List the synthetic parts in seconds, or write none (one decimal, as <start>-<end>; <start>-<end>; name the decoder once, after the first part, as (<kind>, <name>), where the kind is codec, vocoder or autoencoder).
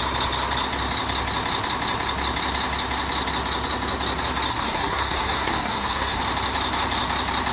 4.5-6.2 (codec, SNAC)